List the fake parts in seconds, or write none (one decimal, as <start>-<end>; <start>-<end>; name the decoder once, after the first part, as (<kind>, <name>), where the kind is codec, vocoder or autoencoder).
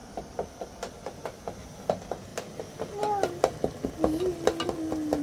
0.0-1.2 (vocoder, BigVGAN v2)